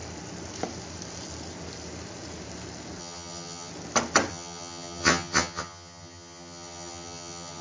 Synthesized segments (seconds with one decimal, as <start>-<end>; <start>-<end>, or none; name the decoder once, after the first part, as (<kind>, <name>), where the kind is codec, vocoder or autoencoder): 3.0-3.7 (vocoder, HiFi-GAN); 4.3-7.6